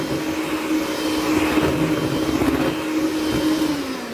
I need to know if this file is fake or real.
real